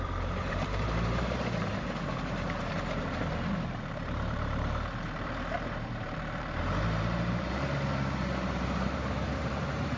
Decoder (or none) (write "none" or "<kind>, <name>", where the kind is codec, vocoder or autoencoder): vocoder, BigVGAN v2